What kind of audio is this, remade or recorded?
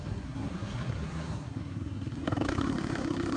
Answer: remade